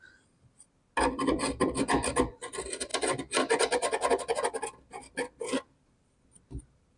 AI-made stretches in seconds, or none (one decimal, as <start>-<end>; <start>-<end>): none